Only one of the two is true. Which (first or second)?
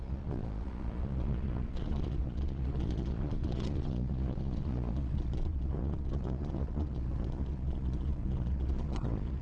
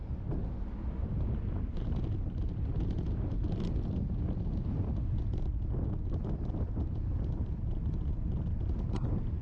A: second